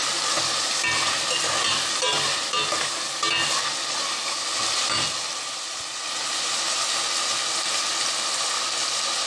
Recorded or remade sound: recorded